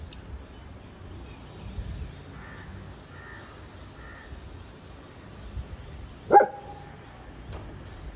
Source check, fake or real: real